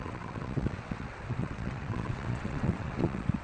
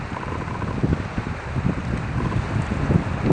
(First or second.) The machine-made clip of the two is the first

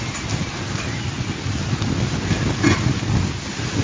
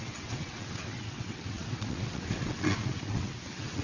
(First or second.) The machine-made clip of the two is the second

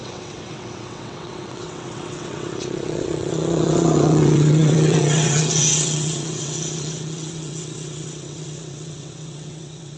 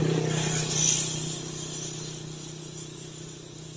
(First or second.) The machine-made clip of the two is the first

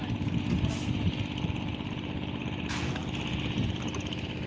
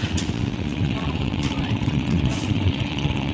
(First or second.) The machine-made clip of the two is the second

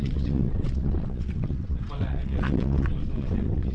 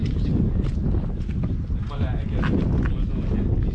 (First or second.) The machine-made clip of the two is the first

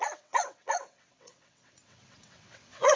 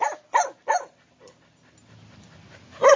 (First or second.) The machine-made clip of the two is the first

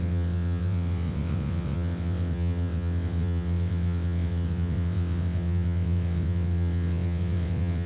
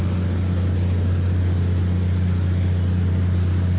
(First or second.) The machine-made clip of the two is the first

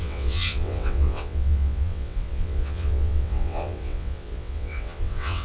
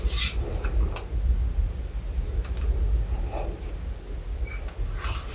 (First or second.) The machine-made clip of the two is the first